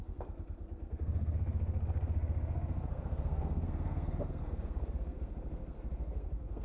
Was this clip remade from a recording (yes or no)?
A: yes